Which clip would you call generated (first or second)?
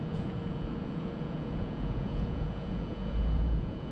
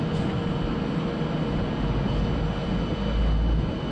first